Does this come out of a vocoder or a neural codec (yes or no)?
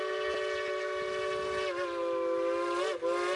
no